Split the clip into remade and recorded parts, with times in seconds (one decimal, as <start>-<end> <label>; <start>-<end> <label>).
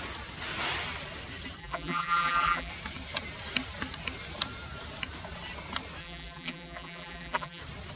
0.0-1.6 recorded; 1.6-2.7 remade; 2.7-6.0 recorded; 6.0-7.6 remade; 7.6-8.0 recorded